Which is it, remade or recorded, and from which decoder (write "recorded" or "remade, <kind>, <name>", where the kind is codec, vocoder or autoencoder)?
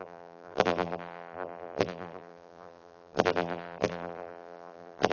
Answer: remade, vocoder, BigVGAN v2